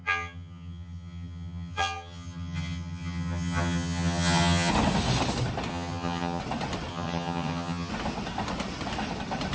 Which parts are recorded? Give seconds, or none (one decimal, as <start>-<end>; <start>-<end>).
4.7-5.7; 6.4-6.9; 7.9-9.5